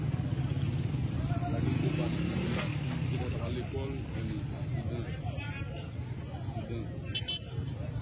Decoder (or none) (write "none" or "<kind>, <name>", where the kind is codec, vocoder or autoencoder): none